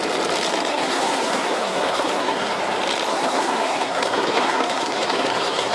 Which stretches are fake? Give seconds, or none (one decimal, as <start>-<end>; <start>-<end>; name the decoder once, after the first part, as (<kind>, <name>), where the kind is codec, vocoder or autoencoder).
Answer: 0.7-2.6 (codec, SNAC); 3.1-5.7